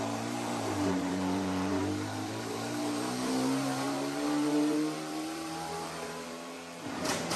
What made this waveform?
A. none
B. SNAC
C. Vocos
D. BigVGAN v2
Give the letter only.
D